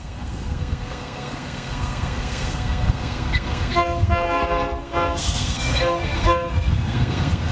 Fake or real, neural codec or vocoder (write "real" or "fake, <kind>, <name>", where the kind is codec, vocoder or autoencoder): fake, codec, SNAC